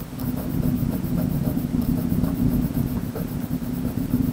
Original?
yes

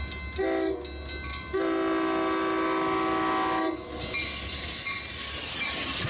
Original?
yes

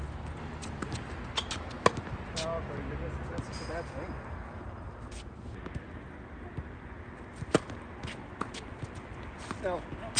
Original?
yes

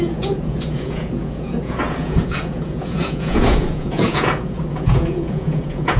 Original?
no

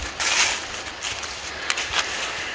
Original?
yes